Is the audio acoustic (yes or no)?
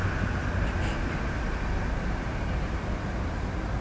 yes